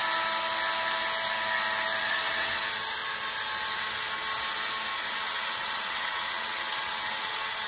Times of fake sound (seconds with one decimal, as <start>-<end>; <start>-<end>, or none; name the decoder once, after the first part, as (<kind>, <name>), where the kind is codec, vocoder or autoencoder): 2.0-2.6 (vocoder, WaveNeXt); 5.1-7.7